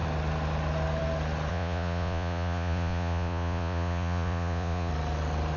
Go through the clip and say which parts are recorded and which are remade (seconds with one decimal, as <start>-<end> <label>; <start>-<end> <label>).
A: 0.0-1.5 recorded; 1.5-4.9 remade; 4.9-5.6 recorded